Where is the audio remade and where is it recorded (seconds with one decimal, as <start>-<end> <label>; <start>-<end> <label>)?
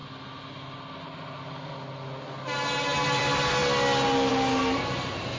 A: 0.0-5.4 recorded